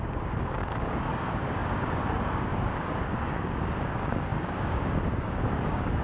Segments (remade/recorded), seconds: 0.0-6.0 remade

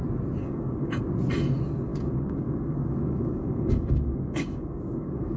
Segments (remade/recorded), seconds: 0.0-0.4 recorded; 0.4-1.0 remade; 1.0-1.9 recorded; 1.9-5.4 remade

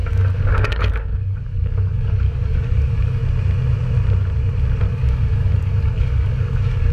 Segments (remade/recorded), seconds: 0.0-3.2 remade; 3.2-4.9 recorded; 4.9-6.9 remade

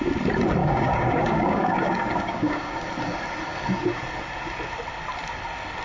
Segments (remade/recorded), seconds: 0.0-0.6 recorded; 0.6-2.9 remade; 2.9-5.8 recorded

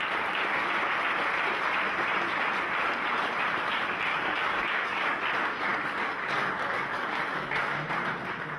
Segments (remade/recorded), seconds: 0.0-4.1 recorded; 4.1-5.2 remade; 5.2-5.7 recorded; 5.7-7.6 remade; 7.6-8.6 recorded